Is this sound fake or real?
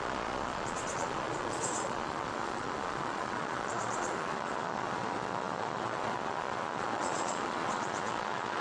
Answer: fake